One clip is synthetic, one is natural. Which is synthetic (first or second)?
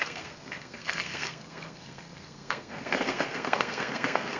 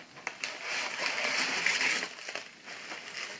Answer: first